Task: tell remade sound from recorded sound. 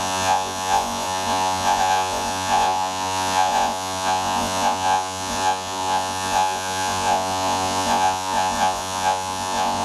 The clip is remade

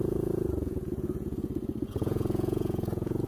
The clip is remade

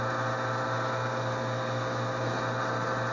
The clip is recorded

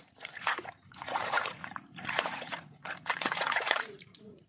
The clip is remade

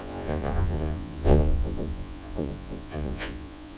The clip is remade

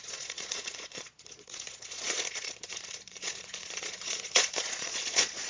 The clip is remade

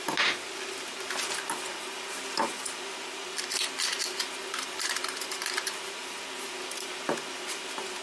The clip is recorded